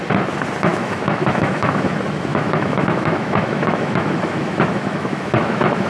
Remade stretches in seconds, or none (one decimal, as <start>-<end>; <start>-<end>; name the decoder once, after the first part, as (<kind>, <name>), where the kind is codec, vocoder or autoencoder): 0.7-1.9 (autoencoder, DAC-VAE); 2.3-5.9